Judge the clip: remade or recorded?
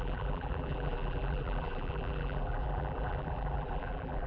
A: remade